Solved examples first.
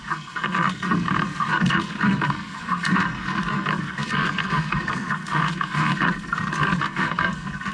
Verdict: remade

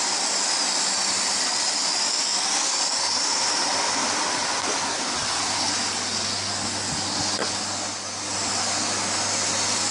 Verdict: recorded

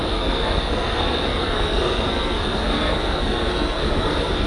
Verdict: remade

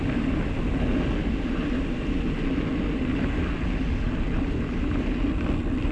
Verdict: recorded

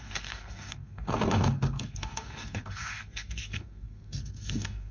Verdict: remade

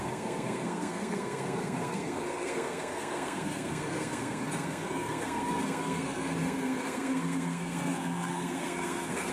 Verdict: remade